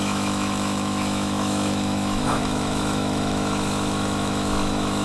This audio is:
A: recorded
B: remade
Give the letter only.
B